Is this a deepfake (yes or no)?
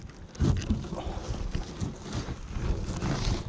no